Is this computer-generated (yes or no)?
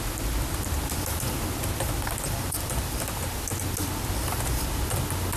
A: no